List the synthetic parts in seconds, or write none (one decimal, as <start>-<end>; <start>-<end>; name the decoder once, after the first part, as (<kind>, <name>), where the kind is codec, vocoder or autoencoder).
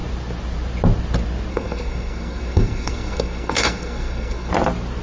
1.5-4.5 (codec, SNAC)